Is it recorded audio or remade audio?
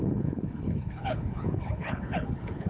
remade